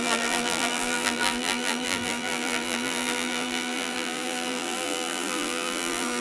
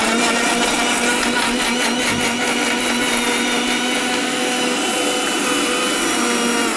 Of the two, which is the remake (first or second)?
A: first